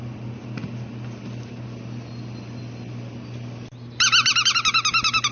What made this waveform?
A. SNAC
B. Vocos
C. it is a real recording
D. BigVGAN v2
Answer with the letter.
C